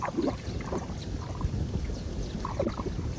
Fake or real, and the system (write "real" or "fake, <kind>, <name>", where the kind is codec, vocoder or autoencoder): real